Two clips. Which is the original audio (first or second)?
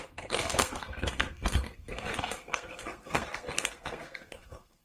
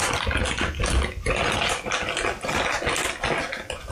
second